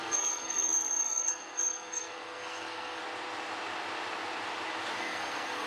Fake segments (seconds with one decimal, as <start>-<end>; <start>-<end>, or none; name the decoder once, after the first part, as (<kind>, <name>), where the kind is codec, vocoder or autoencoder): 0.0-3.0 (codec, SNAC); 5.0-5.7

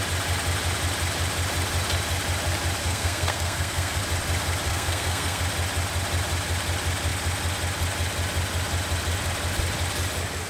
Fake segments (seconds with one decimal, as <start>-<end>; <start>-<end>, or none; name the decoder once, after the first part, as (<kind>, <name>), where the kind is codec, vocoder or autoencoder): 2.8-4.0 (codec, SNAC); 4.7-5.4

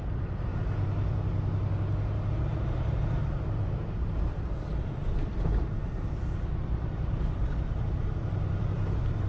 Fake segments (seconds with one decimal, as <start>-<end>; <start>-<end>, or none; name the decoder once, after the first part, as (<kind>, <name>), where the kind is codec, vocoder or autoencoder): 0.0-0.5 (vocoder, BigVGAN v2); 2.5-9.3

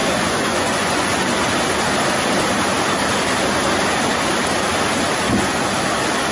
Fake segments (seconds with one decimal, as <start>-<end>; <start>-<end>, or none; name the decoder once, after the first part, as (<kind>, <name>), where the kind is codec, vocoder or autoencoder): 0.0-1.2 (vocoder, Vocos)

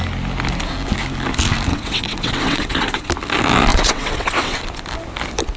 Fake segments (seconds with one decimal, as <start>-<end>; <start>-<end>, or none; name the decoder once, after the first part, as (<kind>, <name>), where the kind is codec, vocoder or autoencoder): 1.7-3.1 (vocoder, WaveNeXt); 3.7-4.6

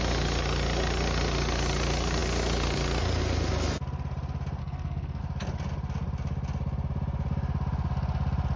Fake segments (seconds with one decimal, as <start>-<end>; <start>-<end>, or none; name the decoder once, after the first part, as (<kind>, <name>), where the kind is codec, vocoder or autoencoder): 4.6-5.2 (codec, SNAC)

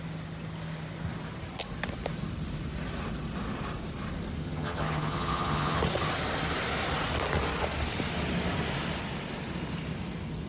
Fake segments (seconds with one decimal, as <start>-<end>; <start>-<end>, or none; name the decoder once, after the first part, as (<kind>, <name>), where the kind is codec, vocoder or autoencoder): 4.4-5.8 (vocoder, HiFi-GAN)

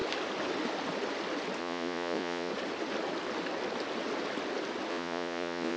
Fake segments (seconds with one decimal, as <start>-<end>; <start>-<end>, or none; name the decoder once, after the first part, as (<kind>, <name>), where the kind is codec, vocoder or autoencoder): 1.6-2.5 (vocoder, Vocos); 4.9-5.8